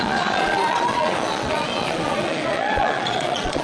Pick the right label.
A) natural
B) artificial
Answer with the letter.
B